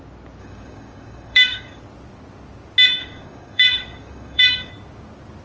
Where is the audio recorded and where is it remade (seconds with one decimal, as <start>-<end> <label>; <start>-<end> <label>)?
0.0-0.4 recorded; 0.4-1.8 remade; 1.8-3.0 recorded; 3.0-4.7 remade; 4.7-5.4 recorded